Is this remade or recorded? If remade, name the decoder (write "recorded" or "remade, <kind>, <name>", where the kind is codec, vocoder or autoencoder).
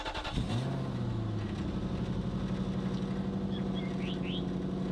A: recorded